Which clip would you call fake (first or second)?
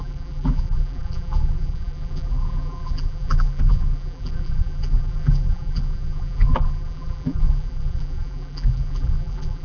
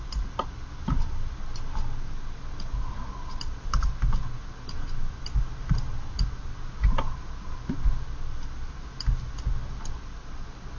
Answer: first